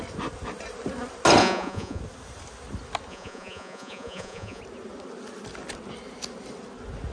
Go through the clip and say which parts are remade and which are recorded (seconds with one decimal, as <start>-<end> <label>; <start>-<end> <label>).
0.0-1.4 recorded; 1.4-2.0 remade; 2.0-3.1 recorded; 3.1-4.6 remade; 4.6-7.1 recorded